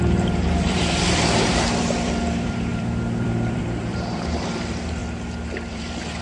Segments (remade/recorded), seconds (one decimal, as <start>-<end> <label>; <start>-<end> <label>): 0.0-5.0 remade; 5.0-5.7 recorded; 5.7-6.2 remade

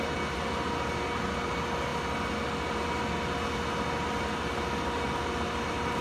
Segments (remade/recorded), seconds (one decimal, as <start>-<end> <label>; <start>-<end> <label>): 0.0-6.0 recorded

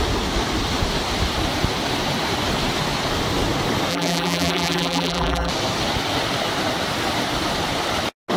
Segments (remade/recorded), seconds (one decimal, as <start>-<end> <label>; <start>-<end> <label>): 0.0-3.9 recorded; 3.9-5.5 remade; 5.5-8.4 recorded

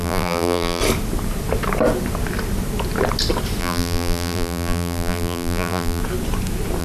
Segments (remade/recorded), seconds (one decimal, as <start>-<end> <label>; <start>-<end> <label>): 0.0-0.8 remade; 0.8-3.6 recorded; 3.6-6.0 remade; 6.0-6.8 recorded

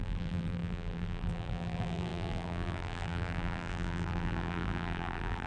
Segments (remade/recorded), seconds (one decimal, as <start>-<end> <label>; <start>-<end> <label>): 0.0-5.5 remade